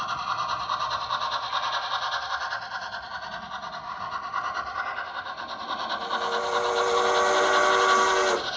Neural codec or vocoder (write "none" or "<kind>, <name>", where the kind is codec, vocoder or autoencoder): none